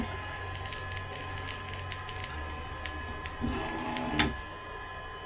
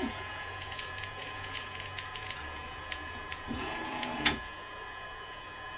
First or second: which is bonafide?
first